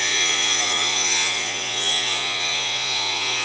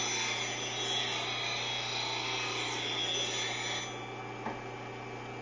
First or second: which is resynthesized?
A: first